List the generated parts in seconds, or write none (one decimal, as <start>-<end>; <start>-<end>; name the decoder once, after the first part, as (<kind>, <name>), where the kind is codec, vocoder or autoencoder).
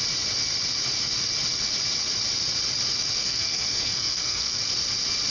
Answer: 3.2-4.6 (codec, SNAC)